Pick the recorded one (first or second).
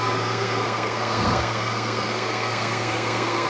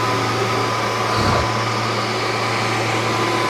second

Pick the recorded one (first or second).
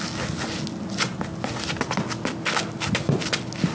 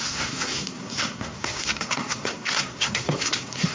first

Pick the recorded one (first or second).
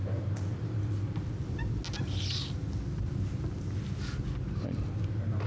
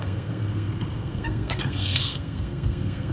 first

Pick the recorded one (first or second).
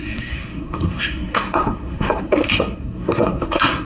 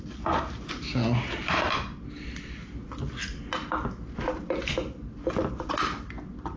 second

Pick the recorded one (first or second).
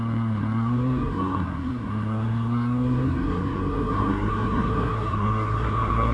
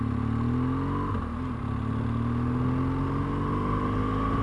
second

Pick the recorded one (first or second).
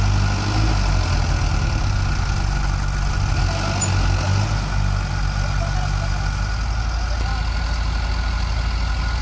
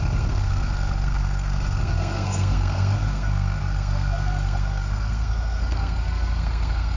first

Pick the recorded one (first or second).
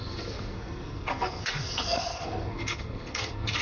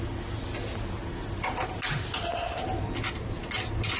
second